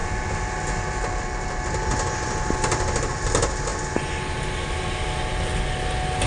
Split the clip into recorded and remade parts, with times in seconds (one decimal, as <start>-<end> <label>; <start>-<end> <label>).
0.0-6.3 recorded